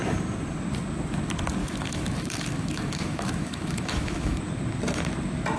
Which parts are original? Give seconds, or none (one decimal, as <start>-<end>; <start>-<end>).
0.0-1.6; 4.4-5.6